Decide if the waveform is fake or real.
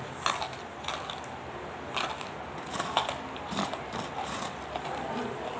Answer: real